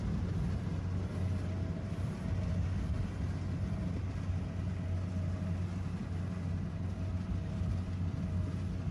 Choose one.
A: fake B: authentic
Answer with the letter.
B